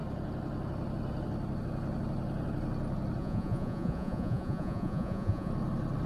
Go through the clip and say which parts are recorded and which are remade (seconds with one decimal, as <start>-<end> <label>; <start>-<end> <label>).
0.0-3.2 recorded; 3.2-5.5 remade; 5.5-6.1 recorded